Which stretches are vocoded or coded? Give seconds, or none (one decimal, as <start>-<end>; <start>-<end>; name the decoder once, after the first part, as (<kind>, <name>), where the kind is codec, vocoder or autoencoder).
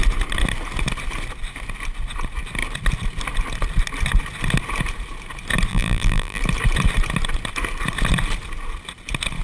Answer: 5.7-6.4 (vocoder, BigVGAN v2)